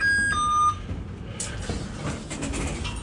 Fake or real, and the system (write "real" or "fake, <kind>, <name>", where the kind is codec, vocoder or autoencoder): real